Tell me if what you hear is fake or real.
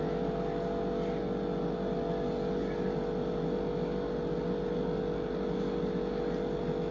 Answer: real